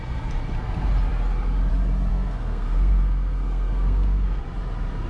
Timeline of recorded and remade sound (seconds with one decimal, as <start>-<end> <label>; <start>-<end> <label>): 0.0-2.1 recorded; 2.1-4.4 remade; 4.4-5.1 recorded